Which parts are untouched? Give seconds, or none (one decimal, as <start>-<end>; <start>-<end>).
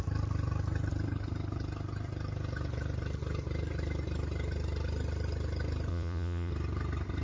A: 0.0-5.9; 6.5-7.2